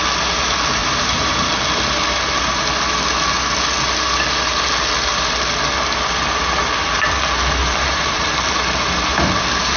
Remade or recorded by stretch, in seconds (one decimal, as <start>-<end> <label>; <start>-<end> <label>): 0.0-0.8 recorded; 0.8-1.5 remade; 1.5-7.6 recorded; 7.6-8.3 remade; 8.3-9.8 recorded